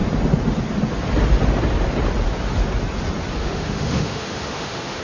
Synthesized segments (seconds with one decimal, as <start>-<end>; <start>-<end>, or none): 3.4-5.0